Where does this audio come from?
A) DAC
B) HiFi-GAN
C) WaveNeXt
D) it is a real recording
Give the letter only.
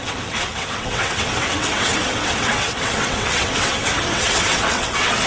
C